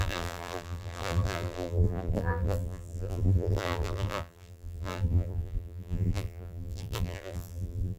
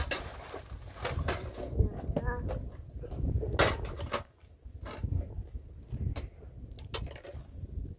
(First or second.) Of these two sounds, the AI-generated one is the first